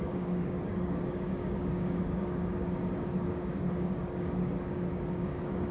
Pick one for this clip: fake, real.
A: fake